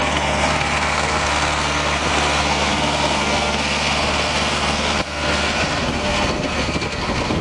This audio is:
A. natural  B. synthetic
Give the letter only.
B